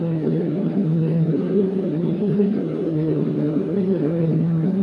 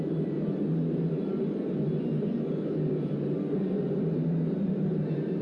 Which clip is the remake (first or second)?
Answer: first